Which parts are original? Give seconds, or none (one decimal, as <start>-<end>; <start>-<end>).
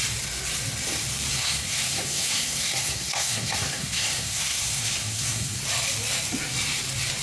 0.0-1.3; 5.6-7.2